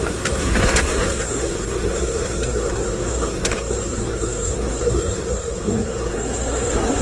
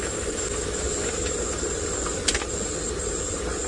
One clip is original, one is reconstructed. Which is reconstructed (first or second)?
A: first